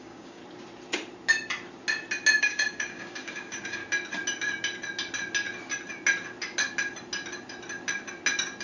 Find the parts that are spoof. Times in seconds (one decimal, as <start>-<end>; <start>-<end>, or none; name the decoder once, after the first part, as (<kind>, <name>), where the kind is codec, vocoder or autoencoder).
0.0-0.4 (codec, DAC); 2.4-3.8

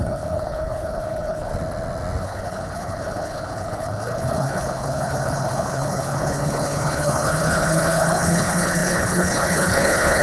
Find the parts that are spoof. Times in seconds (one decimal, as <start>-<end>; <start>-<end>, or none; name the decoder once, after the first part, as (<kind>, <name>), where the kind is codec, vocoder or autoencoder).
0.0-1.5 (codec, HILCodec); 2.2-10.2

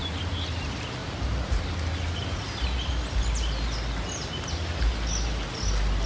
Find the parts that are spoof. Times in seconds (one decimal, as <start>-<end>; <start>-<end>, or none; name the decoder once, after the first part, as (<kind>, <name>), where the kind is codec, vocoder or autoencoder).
none